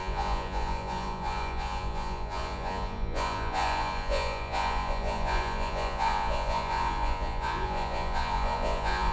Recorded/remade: remade